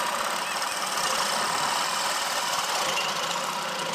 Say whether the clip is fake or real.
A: real